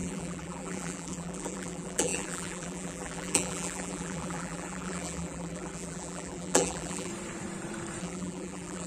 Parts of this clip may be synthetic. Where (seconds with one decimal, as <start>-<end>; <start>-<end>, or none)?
0.0-7.1; 8.0-8.9